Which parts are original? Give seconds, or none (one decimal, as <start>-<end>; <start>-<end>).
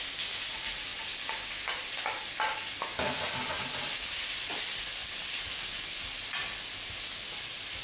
0.0-7.8